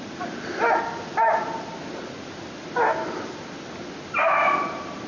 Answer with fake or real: real